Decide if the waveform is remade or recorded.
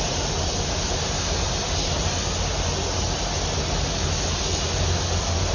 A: recorded